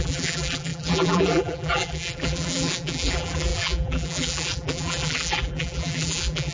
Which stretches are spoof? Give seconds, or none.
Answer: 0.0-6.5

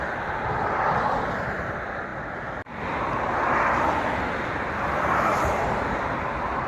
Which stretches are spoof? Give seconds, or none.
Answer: 0.0-6.7